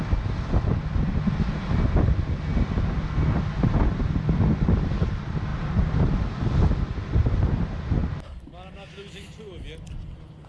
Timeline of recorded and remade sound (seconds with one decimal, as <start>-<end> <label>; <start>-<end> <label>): 0.0-5.5 recorded; 5.5-6.2 remade; 6.2-8.0 recorded; 8.0-8.9 remade; 8.9-10.5 recorded